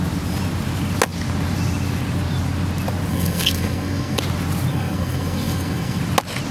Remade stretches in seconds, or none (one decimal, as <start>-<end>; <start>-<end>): 3.1-4.2; 4.7-6.0